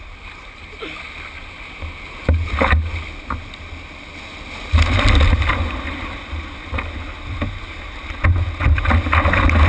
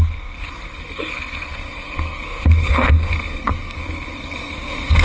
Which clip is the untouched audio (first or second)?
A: first